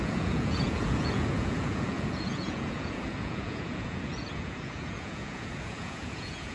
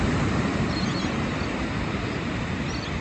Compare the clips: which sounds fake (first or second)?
first